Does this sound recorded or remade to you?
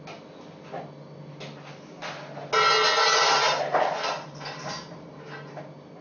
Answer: recorded